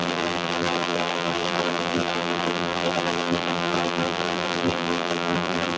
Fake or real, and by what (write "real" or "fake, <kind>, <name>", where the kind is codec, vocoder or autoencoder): fake, vocoder, BigVGAN v2